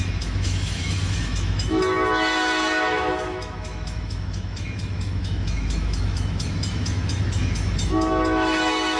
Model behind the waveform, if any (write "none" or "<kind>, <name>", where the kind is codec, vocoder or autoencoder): autoencoder, DAC-VAE